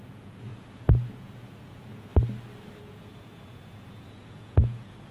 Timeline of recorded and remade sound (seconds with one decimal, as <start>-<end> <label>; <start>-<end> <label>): 0.0-2.1 remade; 2.1-2.8 recorded; 2.8-5.1 remade